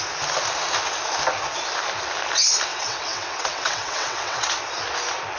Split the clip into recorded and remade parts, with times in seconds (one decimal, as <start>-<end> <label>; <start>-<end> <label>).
0.0-2.7 recorded; 2.7-4.5 remade; 4.5-5.4 recorded